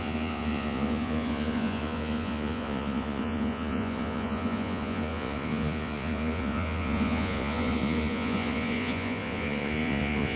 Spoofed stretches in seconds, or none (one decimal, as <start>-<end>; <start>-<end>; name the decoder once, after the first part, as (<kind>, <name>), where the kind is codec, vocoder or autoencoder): 0.0-10.4 (vocoder, Vocos)